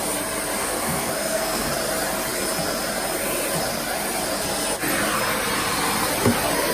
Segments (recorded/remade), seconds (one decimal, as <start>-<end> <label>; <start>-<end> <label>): 0.0-0.6 recorded; 0.6-1.7 remade; 1.7-6.7 recorded